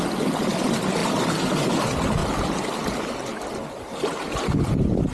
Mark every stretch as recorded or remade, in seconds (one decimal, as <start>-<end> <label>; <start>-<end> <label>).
0.0-5.1 recorded